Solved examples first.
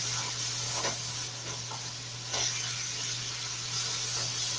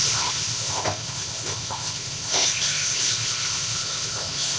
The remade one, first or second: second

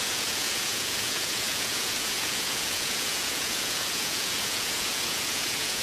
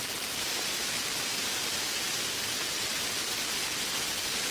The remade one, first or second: first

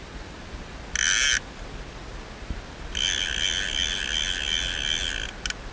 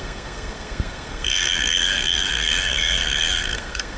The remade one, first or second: second